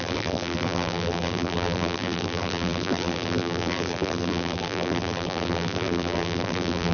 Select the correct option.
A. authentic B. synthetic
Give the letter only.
B